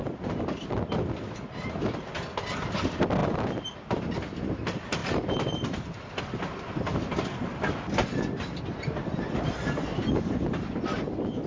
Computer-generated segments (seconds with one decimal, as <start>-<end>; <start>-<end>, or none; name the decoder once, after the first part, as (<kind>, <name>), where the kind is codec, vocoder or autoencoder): 5.0-6.2 (vocoder, BigVGAN v2)